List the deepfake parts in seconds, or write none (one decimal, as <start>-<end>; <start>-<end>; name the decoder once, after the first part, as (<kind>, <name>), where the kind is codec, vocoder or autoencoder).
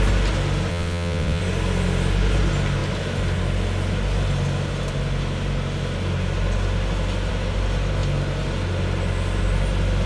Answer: 0.7-1.4 (vocoder, WaveNeXt)